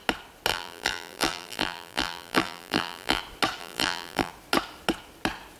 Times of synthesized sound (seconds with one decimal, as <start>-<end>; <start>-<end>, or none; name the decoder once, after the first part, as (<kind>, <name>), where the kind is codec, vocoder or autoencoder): 0.5-3.2 (vocoder, BigVGAN v2); 3.6-4.3